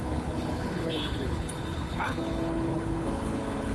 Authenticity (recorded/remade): remade